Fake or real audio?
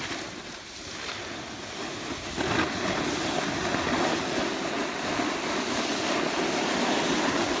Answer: real